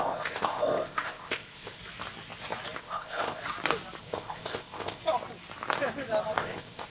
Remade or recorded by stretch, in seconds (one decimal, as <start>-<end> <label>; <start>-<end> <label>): 0.0-1.8 remade; 1.8-2.8 recorded; 2.8-3.4 remade; 3.4-4.0 recorded; 4.0-5.0 remade; 5.0-6.4 recorded; 6.4-6.9 remade